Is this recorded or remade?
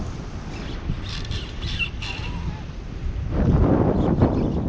recorded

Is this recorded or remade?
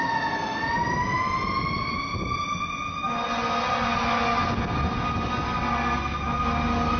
recorded